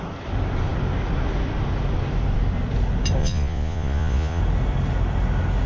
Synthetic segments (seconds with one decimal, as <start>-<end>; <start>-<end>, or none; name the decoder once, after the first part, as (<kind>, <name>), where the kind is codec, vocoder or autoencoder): 3.2-4.4 (vocoder, Vocos)